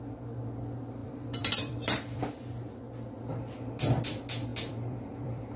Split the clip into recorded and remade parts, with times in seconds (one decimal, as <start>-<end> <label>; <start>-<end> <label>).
0.0-1.0 recorded; 1.0-2.2 remade; 2.2-4.5 recorded; 4.5-5.6 remade